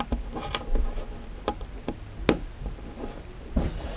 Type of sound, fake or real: real